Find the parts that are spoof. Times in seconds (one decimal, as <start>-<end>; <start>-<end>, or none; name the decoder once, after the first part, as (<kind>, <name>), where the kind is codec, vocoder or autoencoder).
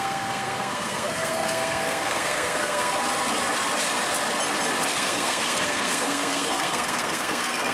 0.0-2.9 (codec, SNAC); 4.9-7.7